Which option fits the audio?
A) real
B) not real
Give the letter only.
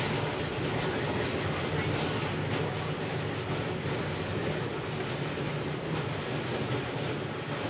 A